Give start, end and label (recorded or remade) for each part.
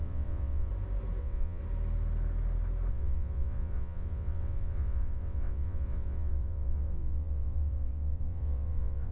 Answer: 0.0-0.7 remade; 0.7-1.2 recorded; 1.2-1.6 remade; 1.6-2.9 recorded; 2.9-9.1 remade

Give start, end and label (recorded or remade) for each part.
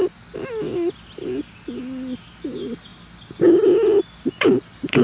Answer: 0.0-5.0 recorded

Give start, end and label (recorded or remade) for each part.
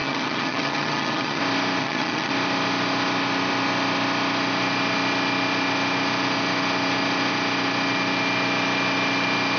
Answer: 0.0-1.4 remade; 1.4-1.8 recorded; 1.8-2.3 remade; 2.3-9.6 recorded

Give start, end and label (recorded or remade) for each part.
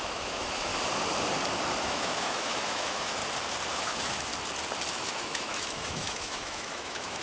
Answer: 0.0-0.7 remade; 0.7-1.8 recorded; 1.8-3.2 remade; 3.2-3.7 recorded; 3.7-4.3 remade; 4.3-4.9 recorded; 4.9-7.2 remade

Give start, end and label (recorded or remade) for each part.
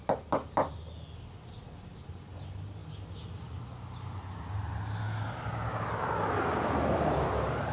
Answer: 0.0-7.7 recorded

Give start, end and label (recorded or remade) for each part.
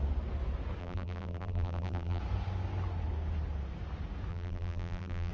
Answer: 0.0-0.8 recorded; 0.8-2.2 remade; 2.2-4.3 recorded; 4.3-5.3 remade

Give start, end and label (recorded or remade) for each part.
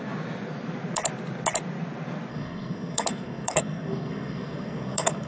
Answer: 0.0-2.3 recorded; 2.3-5.3 remade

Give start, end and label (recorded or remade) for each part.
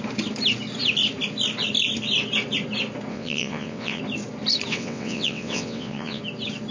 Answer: 0.0-3.1 recorded; 3.1-4.0 remade; 4.0-4.7 recorded; 4.7-6.2 remade; 6.2-6.7 recorded